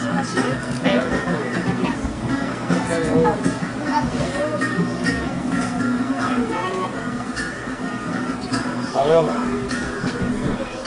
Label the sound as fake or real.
fake